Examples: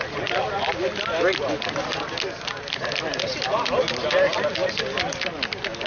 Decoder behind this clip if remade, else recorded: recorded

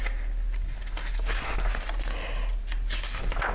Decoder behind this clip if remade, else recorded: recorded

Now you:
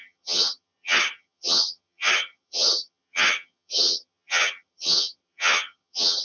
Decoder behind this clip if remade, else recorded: remade, vocoder, HiFi-GAN